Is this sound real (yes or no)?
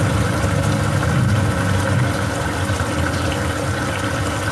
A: yes